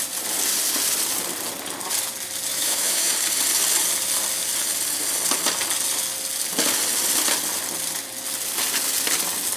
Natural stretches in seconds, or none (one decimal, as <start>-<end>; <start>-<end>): 0.0-2.5; 3.1-9.6